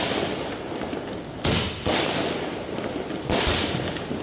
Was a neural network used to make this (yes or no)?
no